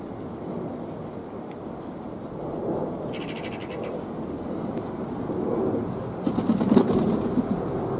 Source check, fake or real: real